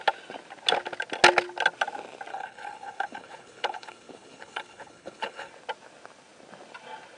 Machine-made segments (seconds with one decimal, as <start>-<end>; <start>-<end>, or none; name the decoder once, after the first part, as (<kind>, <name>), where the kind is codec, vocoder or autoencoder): 2.3-5.5 (codec, HILCodec)